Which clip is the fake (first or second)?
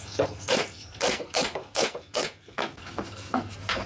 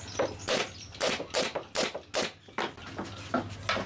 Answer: first